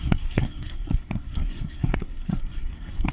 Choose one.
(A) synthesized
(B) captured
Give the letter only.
A